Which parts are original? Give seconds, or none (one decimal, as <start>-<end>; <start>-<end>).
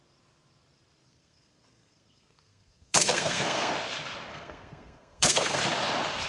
0.0-1.0; 3.7-4.3; 5.6-6.3